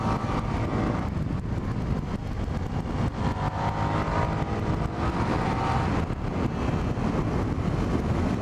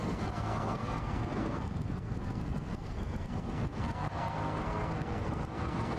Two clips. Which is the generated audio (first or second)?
second